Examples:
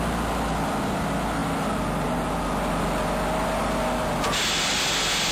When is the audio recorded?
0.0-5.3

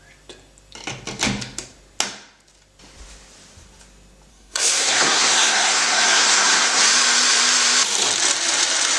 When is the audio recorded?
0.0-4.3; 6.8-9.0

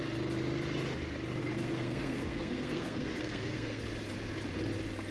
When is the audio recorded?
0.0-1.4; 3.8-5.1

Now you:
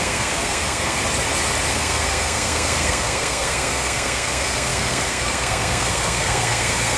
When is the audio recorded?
1.0-1.7